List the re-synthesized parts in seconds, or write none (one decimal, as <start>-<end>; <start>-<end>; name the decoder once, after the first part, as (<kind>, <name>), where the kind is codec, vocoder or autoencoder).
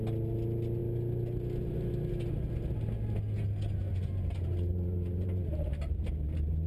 3.9-6.7 (vocoder, BigVGAN v2)